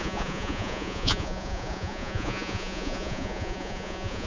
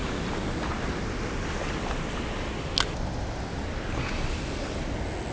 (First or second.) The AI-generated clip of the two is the first